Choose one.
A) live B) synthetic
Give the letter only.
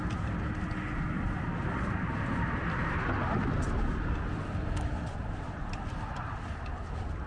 A